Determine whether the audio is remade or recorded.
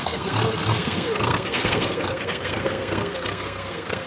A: remade